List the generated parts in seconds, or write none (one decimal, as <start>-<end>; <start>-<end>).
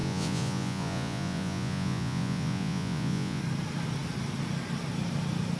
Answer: 0.0-3.4